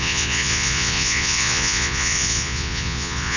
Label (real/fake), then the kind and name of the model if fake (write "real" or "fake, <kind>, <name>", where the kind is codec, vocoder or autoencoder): fake, vocoder, Vocos